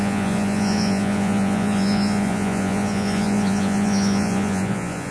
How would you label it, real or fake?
fake